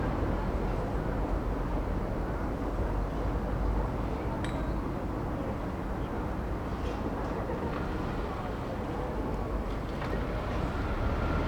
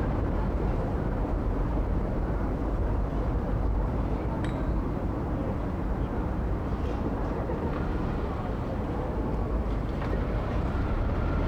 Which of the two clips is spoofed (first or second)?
second